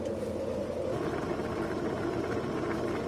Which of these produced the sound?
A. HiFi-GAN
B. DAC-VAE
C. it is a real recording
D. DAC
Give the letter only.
C